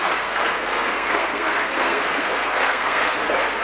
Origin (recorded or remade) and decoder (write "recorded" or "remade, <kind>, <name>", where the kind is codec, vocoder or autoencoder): remade, codec, SNAC